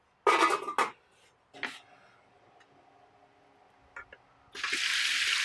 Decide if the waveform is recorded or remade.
recorded